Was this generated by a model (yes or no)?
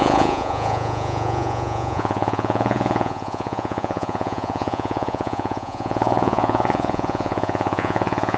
yes